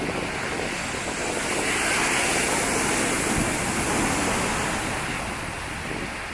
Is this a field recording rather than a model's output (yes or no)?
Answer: yes